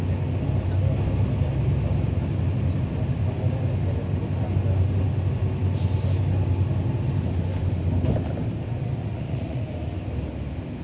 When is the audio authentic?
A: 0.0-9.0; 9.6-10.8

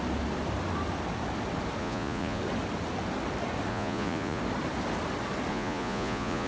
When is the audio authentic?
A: 0.0-1.8; 2.4-3.7; 4.4-5.5

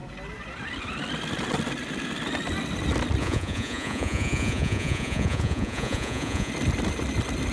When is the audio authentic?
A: 0.0-3.2; 6.5-7.5

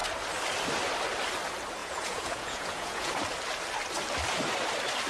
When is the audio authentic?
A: 0.0-1.8; 3.2-5.1

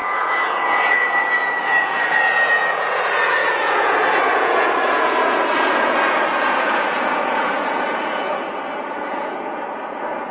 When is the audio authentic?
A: 8.3-9.0

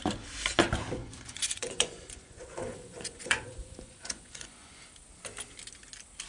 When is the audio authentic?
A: 0.0-1.0; 4.8-6.3